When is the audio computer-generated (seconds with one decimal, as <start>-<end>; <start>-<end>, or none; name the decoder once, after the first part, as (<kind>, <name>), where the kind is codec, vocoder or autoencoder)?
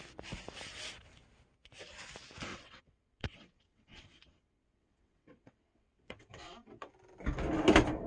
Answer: 2.5-6.9 (vocoder, WaveNeXt)